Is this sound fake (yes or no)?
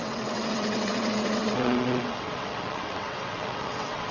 yes